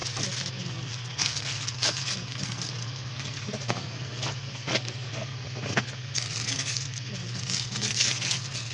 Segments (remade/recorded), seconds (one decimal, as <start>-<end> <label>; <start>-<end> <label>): 0.0-0.5 recorded; 0.5-8.7 remade